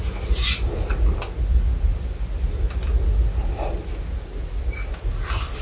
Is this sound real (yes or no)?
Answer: yes